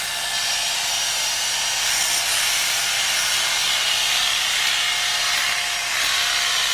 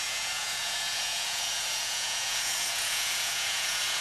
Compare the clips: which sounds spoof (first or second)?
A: second